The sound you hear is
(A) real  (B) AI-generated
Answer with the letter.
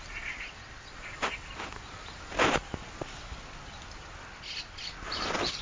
A